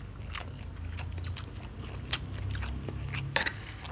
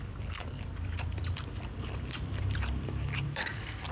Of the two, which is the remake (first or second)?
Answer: second